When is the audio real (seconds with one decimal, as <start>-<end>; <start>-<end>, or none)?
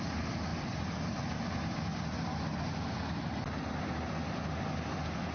0.0-5.3